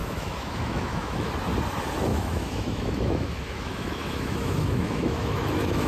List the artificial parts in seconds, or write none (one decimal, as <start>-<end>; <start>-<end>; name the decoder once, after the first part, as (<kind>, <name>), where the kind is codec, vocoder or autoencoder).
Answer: 0.0-1.3 (autoencoder, DAC-VAE); 2.1-5.9